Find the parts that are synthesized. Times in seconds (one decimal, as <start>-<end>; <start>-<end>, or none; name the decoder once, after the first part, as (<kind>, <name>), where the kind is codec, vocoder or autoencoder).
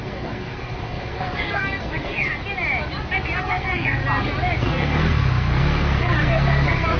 0.0-2.3 (codec, SNAC); 3.4-4.0; 4.6-7.0